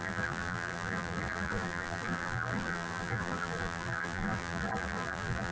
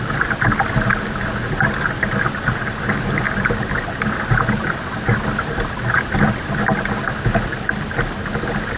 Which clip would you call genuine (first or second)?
second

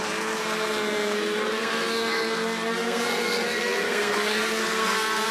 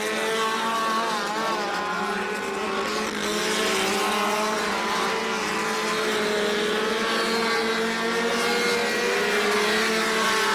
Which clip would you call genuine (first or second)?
second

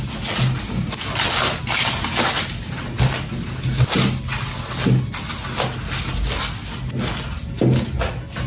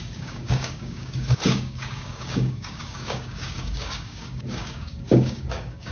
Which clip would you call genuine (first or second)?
first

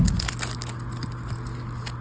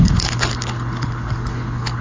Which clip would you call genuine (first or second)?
first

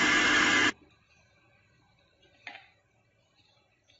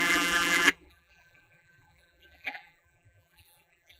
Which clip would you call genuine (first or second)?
first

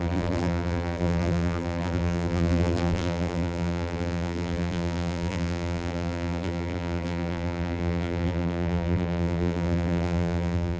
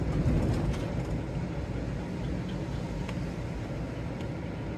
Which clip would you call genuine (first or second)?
second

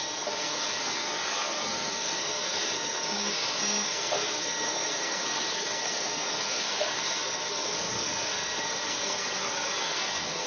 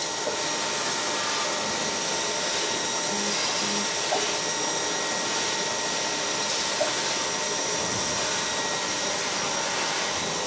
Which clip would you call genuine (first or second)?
second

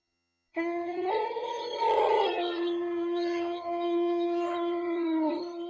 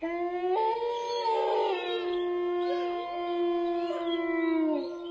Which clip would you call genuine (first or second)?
second